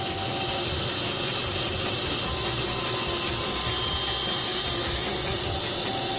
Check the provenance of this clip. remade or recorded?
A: recorded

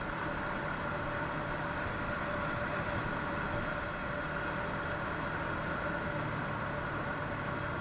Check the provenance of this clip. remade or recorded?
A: recorded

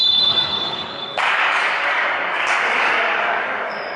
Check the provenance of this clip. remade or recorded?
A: remade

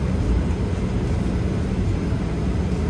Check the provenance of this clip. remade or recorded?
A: recorded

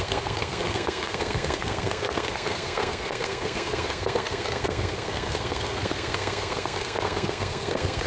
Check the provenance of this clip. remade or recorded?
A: remade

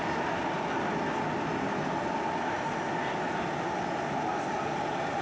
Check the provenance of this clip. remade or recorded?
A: recorded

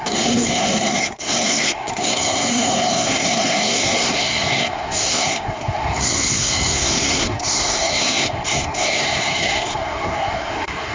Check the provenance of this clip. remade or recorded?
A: remade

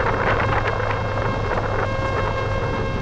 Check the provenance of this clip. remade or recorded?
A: recorded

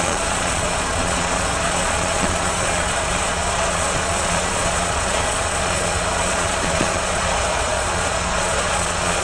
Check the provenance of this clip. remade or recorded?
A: remade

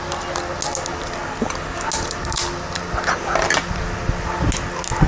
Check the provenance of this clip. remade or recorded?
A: recorded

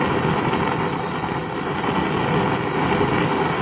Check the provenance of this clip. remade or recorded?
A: recorded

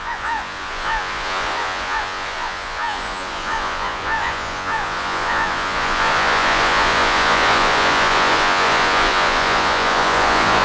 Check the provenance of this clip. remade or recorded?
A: remade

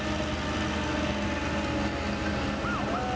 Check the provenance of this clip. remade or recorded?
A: recorded